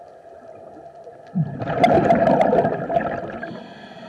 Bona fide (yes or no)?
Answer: yes